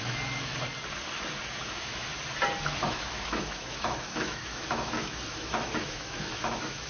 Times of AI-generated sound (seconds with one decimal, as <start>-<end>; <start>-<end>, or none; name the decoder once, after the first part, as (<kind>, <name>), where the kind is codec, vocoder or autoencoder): 0.0-0.5 (autoencoder, DAC-VAE); 1.5-2.1; 2.8-6.9